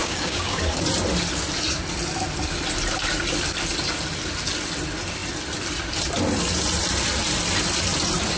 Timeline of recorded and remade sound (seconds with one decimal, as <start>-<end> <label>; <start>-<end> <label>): 0.0-0.6 remade; 0.6-8.4 recorded